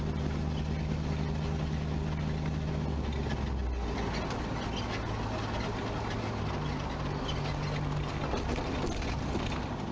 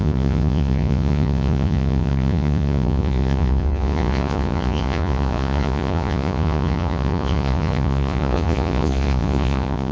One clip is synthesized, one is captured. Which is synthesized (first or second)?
second